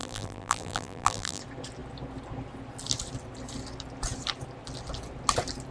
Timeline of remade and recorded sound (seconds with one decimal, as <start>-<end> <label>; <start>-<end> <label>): 0.0-1.4 remade; 1.4-5.7 recorded